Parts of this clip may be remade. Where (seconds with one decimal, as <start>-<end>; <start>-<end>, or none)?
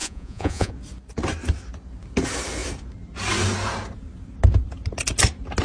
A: 0.0-0.7